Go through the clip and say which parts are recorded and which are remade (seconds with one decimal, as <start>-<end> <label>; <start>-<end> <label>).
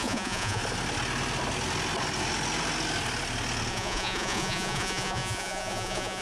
0.0-0.6 remade; 0.6-3.7 recorded; 3.7-6.2 remade